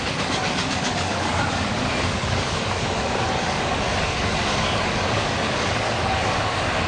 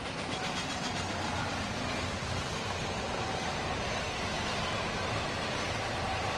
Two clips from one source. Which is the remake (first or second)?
first